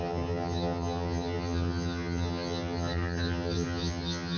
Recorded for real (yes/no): no